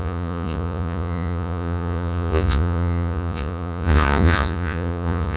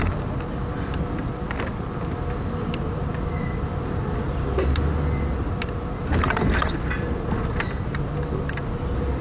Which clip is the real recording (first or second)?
second